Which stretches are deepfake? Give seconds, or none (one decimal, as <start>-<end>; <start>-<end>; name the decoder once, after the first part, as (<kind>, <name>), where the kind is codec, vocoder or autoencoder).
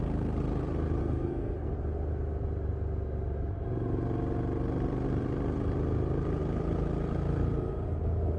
1.0-1.7 (codec, SNAC)